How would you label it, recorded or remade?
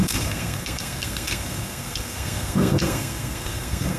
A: remade